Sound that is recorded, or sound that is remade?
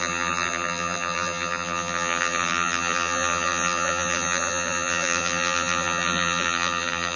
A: remade